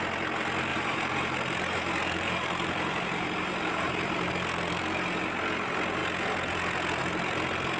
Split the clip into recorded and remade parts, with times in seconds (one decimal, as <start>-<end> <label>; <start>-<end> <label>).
0.0-0.7 recorded; 0.7-4.3 remade; 4.3-7.8 recorded